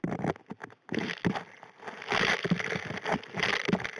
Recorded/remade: recorded